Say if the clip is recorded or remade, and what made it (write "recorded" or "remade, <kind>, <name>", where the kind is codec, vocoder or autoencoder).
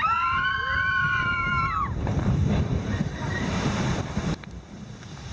remade, vocoder, BigVGAN v2